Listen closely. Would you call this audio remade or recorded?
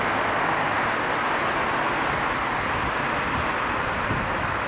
recorded